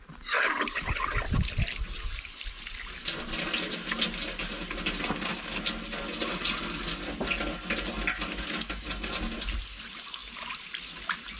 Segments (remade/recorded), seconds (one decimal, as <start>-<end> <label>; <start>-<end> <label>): 0.0-11.4 recorded